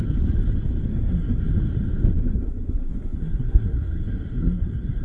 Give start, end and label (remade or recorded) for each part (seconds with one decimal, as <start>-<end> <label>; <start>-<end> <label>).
0.0-0.9 recorded; 0.9-1.4 remade; 1.4-2.2 recorded; 2.2-5.0 remade